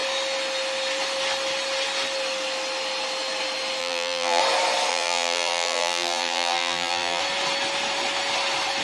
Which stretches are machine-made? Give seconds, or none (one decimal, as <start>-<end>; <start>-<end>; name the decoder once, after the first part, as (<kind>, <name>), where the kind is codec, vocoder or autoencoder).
3.8-4.4 (vocoder, BigVGAN v2); 4.9-7.2